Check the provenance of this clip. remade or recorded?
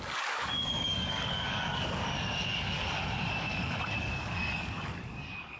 remade